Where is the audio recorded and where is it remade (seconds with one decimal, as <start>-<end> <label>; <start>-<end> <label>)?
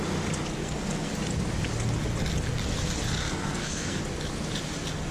0.0-0.6 recorded; 0.6-1.1 remade; 1.1-3.2 recorded; 3.2-4.0 remade; 4.0-5.1 recorded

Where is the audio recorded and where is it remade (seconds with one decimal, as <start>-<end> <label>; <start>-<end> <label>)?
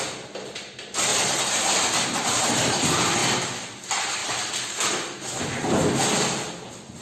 0.0-1.1 recorded; 1.1-2.8 remade; 2.8-4.2 recorded; 4.2-5.4 remade; 5.4-7.0 recorded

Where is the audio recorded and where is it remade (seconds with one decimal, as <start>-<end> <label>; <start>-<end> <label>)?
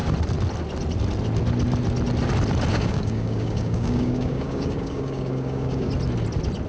0.0-2.7 recorded; 2.7-5.9 remade; 5.9-6.7 recorded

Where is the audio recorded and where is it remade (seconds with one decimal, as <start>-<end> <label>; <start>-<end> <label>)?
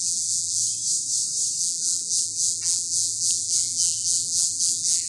0.0-0.6 remade; 0.6-1.6 recorded; 1.6-5.1 remade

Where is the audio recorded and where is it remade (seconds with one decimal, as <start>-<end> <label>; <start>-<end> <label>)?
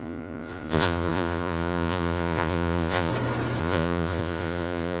0.0-3.1 remade; 3.1-3.6 recorded; 3.6-5.0 remade